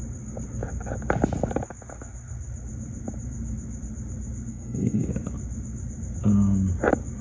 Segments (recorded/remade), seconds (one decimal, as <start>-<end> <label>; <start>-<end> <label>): 0.0-4.5 recorded; 4.5-5.1 remade; 5.1-7.2 recorded